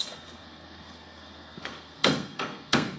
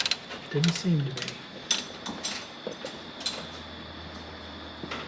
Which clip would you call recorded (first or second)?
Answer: second